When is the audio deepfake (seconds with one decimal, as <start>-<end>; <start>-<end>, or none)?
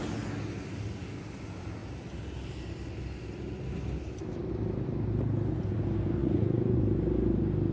6.2-6.8